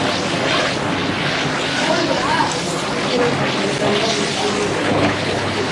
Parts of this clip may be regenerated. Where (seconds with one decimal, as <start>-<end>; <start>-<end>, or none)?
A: 4.8-5.7